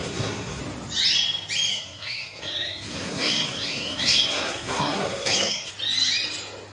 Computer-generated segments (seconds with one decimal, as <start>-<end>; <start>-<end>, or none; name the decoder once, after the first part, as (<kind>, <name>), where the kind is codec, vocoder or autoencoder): 0.0-0.6 (codec, SNAC); 1.7-5.7